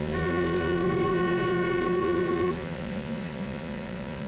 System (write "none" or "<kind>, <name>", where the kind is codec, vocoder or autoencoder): vocoder, Vocos